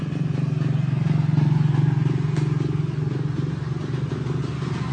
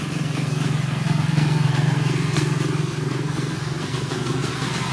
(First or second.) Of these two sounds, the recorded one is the first